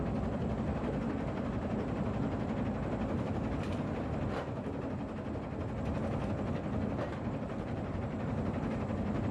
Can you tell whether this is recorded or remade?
recorded